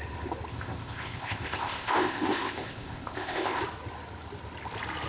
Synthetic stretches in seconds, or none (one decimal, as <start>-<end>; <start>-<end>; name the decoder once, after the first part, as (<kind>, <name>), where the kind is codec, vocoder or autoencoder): 0.5-3.6 (codec, ZipCodec)